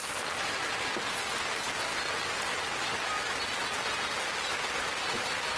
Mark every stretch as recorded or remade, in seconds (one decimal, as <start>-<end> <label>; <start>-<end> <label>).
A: 0.0-5.6 recorded